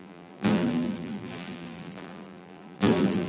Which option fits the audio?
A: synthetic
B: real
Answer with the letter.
A